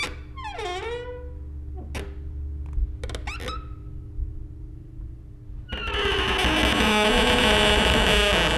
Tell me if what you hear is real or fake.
real